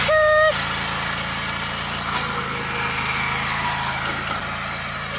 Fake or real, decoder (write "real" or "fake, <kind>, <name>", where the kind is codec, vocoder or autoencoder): real